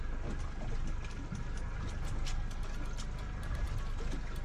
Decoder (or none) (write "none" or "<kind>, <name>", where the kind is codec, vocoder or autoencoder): none